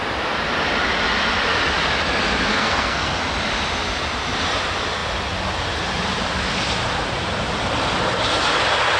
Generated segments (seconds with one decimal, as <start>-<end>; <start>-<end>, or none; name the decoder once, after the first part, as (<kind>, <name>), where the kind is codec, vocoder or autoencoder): 2.5-3.2 (codec, SNAC)